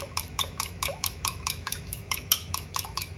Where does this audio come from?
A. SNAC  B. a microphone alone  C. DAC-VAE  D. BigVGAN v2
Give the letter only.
C